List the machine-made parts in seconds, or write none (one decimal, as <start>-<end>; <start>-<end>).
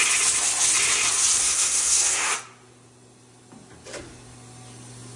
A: 1.4-2.3